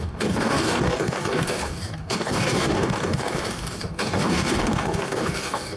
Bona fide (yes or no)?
no